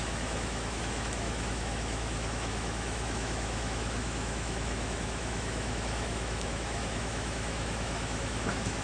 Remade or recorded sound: remade